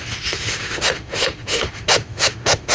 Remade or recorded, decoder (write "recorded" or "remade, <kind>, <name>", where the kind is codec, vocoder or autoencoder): remade, autoencoder, DAC-VAE